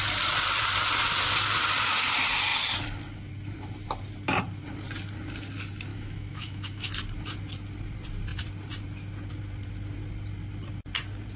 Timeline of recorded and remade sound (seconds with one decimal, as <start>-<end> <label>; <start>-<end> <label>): 0.0-5.9 recorded; 5.9-6.9 remade; 6.9-11.4 recorded